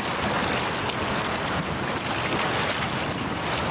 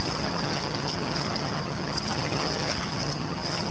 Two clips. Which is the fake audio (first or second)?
second